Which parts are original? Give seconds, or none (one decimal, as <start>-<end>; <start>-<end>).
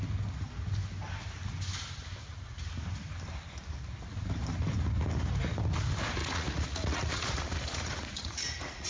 0.0-2.2; 2.7-6.2